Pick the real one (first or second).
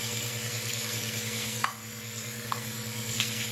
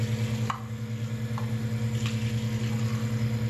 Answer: second